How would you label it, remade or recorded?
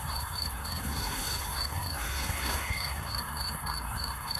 remade